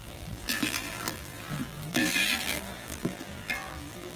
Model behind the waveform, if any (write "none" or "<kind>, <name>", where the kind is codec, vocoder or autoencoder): vocoder, BigVGAN v2